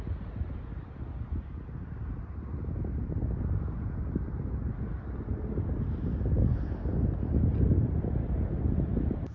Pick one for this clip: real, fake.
real